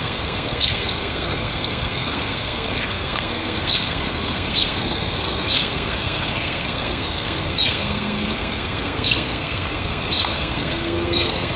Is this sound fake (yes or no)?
yes